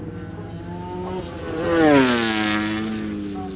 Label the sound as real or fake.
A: real